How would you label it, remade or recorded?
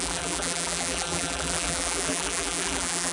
remade